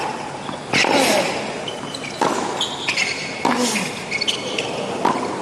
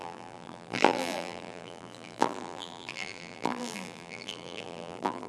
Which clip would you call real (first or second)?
first